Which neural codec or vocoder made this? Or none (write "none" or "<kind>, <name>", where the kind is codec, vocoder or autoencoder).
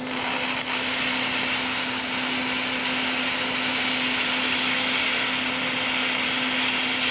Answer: none